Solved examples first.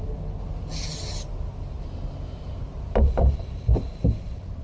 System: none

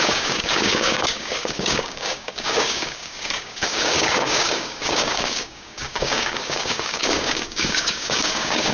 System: codec, DAC